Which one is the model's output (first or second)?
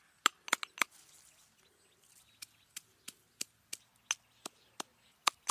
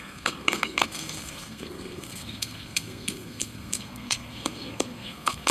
second